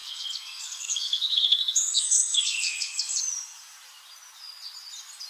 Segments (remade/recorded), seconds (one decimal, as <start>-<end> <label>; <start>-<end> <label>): 0.0-3.2 remade; 3.2-5.3 recorded